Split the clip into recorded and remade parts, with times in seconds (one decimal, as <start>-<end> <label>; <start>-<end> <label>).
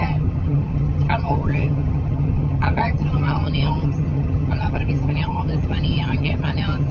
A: 0.0-6.9 remade